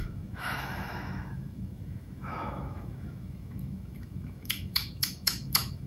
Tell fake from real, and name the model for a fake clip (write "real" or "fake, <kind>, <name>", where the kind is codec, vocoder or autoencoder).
fake, autoencoder, DAC-VAE